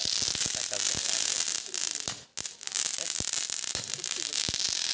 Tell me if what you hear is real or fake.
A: real